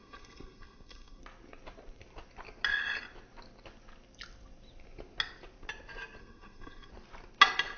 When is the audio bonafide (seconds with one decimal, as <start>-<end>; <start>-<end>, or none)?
1.2-6.2; 6.9-7.8